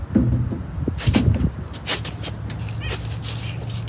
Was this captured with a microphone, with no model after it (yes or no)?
yes